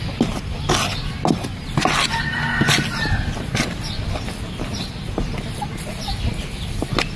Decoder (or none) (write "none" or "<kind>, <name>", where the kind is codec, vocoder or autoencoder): none